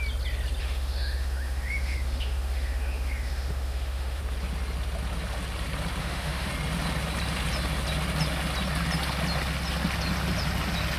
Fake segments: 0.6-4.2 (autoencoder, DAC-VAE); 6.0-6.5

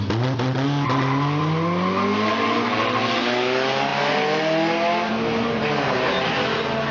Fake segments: none

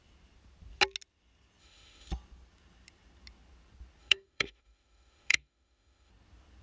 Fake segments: 1.6-2.1 (autoencoder, DAC-VAE); 4.0-6.1

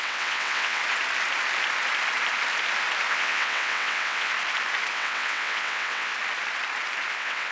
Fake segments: 0.0-0.8 (vocoder, WaveNeXt); 3.1-4.3; 4.9-6.1; 7.1-7.5

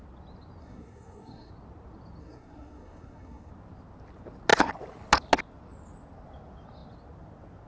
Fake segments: 0.6-1.5 (codec, SNAC); 2.2-3.5

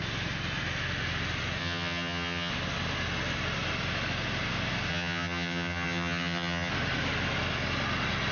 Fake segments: 1.6-2.5 (vocoder, HiFi-GAN); 4.9-6.7